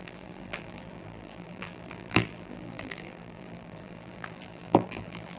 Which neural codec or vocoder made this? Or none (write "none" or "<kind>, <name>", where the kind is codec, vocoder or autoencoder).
vocoder, BigVGAN v2